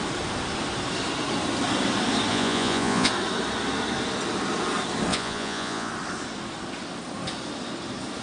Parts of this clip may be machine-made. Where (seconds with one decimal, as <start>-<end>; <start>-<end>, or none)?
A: 2.3-3.1; 5.1-5.9